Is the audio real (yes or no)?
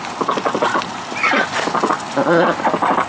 yes